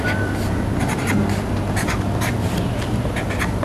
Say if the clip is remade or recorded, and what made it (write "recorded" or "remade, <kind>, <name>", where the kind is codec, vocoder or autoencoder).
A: recorded